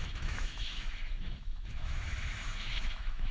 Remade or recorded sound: remade